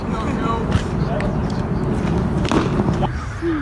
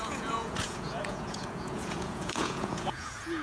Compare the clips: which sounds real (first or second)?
first